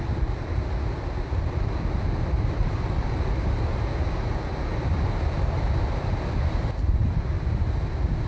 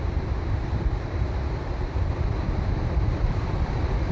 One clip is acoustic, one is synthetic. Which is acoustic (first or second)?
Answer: first